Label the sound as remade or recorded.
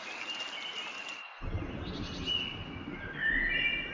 recorded